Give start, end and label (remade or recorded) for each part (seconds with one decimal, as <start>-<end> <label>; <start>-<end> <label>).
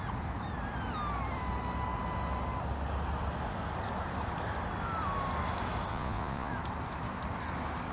0.0-5.9 recorded; 5.9-6.5 remade; 6.5-7.9 recorded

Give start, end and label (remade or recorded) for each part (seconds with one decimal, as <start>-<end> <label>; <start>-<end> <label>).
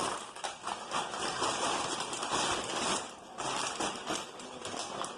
0.0-5.2 recorded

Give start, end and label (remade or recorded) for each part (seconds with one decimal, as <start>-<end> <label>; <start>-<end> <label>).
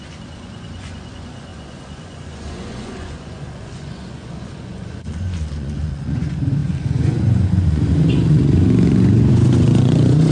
0.0-10.3 remade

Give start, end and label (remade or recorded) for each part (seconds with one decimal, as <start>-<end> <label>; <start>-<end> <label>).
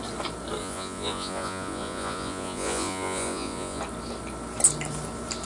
0.0-0.6 recorded; 0.6-3.8 remade; 3.8-5.4 recorded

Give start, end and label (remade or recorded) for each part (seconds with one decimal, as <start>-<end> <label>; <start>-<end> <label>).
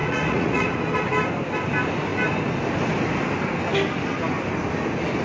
0.0-0.8 remade; 0.8-5.2 recorded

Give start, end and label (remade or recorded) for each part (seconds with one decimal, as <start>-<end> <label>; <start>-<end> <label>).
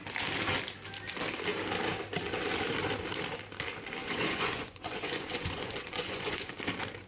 0.0-4.0 recorded; 4.0-6.5 remade; 6.5-7.1 recorded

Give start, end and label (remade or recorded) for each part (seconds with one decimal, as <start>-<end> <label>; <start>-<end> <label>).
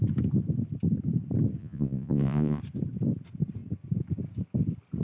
0.0-1.6 recorded; 1.6-2.6 remade; 2.6-5.0 recorded